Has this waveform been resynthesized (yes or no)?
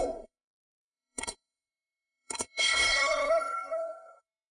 yes